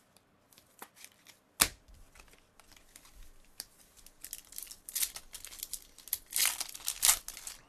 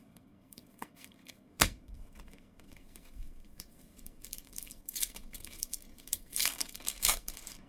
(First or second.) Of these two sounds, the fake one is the second